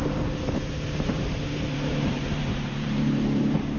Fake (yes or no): yes